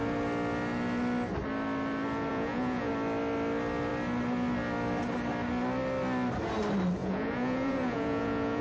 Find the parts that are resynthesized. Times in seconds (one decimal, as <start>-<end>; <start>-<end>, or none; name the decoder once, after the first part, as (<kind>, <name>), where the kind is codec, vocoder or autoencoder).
2.3-2.9 (vocoder, Vocos); 7.0-8.6

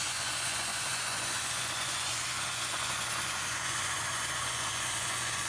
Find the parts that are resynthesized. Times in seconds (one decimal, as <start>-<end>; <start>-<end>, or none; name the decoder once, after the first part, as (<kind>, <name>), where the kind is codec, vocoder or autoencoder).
0.0-5.5 (vocoder, Vocos)

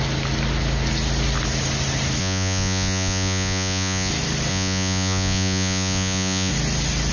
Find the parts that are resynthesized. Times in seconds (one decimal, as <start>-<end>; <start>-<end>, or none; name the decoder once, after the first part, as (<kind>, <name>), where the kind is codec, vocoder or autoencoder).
2.2-4.1 (vocoder, Vocos); 4.5-6.5

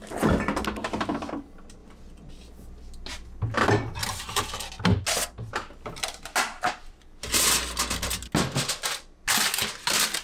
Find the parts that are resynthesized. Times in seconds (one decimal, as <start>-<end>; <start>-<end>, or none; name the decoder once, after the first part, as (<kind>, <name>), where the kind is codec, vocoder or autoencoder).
none

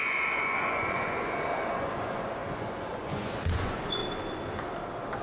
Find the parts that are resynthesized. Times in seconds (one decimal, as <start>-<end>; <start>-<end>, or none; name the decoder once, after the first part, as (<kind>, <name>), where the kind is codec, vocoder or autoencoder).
0.0-4.0 (vocoder, Vocos)

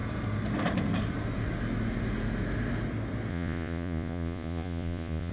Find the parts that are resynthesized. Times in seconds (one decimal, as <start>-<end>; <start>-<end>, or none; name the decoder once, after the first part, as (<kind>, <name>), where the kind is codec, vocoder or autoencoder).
3.3-5.3 (vocoder, Vocos)